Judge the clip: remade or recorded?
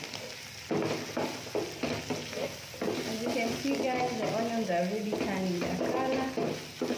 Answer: recorded